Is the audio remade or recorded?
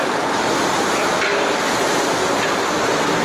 recorded